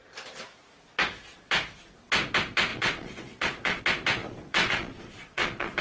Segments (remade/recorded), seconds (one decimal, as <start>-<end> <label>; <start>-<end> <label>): 0.0-2.7 recorded; 2.7-3.8 remade; 3.8-4.2 recorded; 4.2-5.8 remade